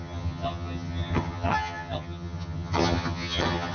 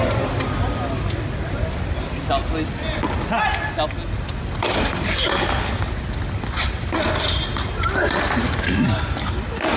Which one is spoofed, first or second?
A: first